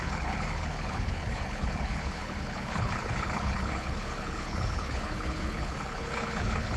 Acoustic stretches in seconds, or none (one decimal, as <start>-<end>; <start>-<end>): none